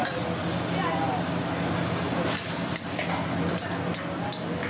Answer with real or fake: real